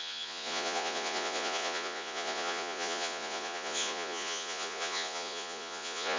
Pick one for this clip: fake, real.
fake